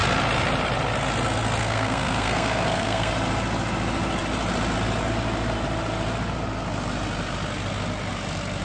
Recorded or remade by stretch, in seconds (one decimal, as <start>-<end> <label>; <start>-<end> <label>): 0.0-1.6 recorded; 1.6-3.1 remade; 3.1-8.6 recorded